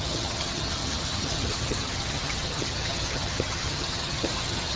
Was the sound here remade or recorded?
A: remade